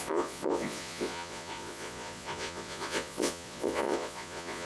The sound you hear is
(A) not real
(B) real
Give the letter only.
A